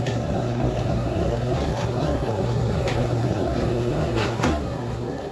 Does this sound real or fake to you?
fake